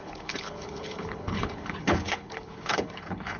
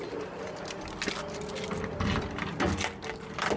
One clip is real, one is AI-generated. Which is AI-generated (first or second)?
first